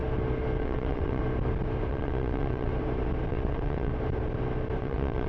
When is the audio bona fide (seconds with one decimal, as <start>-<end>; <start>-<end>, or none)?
0.0-0.6; 1.2-1.9; 2.7-3.3; 3.9-4.8

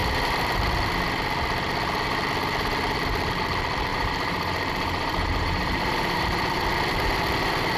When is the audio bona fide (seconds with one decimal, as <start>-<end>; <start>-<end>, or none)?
0.0-3.9; 6.6-7.8

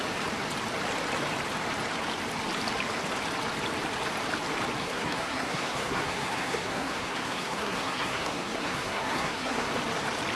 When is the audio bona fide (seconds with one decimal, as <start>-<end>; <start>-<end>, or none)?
0.0-4.8; 9.7-10.4

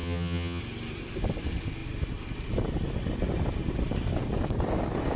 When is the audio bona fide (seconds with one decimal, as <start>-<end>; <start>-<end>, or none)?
0.6-5.2

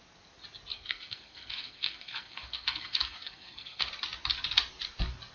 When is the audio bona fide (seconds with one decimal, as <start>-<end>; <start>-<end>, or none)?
0.0-0.7; 3.9-5.3

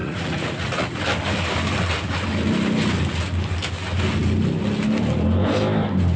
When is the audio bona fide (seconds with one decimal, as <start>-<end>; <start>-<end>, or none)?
1.0-6.2

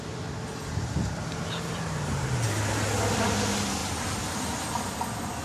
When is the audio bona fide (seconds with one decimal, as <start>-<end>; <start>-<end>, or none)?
0.0-3.8; 4.4-5.4

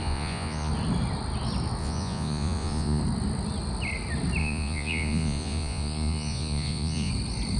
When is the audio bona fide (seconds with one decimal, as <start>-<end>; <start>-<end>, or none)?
0.7-1.8; 3.0-4.4; 7.1-7.6